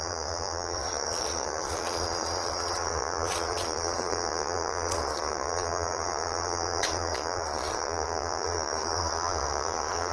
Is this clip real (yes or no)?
no